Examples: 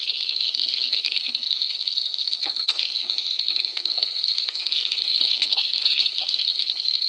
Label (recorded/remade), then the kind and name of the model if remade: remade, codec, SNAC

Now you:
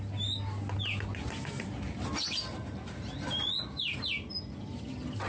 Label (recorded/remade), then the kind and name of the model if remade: recorded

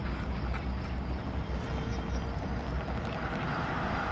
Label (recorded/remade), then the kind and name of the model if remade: recorded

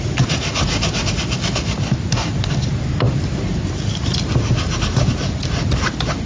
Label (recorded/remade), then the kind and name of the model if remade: recorded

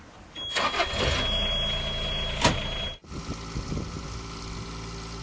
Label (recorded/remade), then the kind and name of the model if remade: recorded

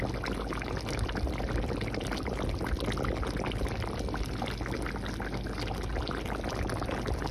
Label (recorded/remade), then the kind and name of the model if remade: recorded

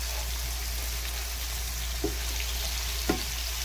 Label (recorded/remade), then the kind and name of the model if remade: recorded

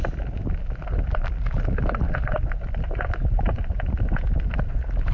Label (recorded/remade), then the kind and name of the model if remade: recorded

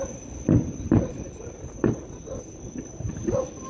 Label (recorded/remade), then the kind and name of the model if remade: recorded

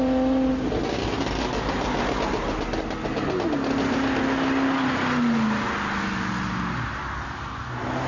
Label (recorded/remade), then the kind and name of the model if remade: recorded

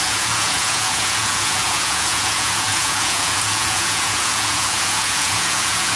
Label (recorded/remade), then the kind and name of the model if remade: remade, vocoder, Vocos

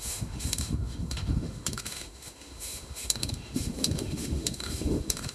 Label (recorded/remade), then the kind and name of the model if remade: remade, autoencoder, DAC-VAE